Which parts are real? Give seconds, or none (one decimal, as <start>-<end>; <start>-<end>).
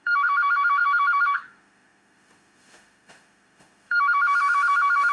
none